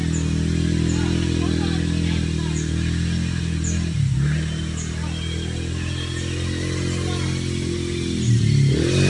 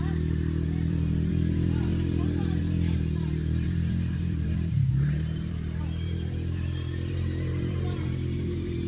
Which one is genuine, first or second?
first